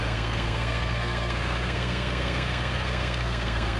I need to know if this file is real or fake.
fake